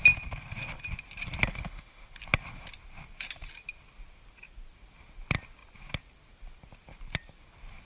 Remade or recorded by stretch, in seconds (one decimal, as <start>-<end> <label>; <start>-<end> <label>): 0.0-1.5 recorded; 1.5-2.1 remade; 2.1-7.9 recorded